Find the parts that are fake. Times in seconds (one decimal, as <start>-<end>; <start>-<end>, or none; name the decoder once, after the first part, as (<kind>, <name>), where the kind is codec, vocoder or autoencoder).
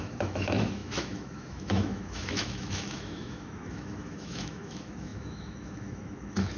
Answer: 0.0-6.6 (autoencoder, DAC-VAE)